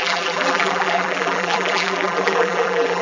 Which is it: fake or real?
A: fake